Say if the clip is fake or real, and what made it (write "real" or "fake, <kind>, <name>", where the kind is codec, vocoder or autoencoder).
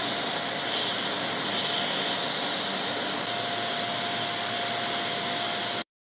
real